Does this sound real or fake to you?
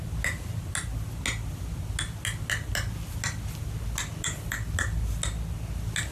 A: real